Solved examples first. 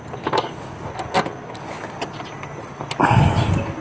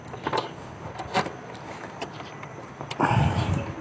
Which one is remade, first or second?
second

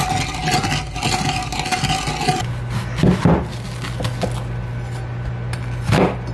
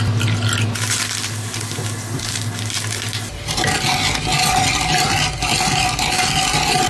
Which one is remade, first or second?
second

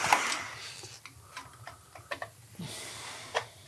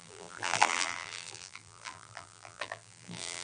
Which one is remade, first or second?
second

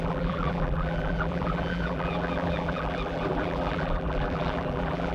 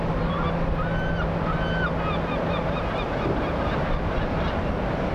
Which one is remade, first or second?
first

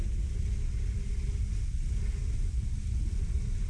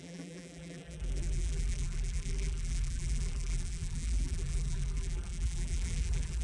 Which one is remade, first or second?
second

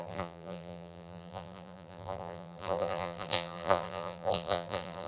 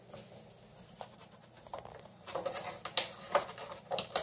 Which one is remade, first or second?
first